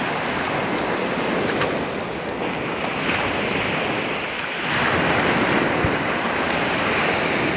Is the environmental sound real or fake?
real